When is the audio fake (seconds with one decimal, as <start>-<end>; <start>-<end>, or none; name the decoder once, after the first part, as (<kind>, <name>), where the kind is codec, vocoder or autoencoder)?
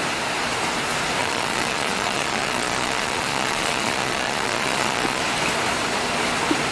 1.2-5.2 (vocoder, Vocos)